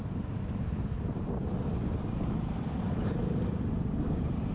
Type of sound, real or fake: real